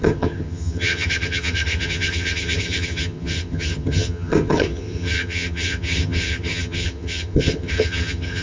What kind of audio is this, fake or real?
fake